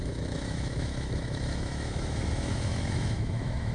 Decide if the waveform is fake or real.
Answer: fake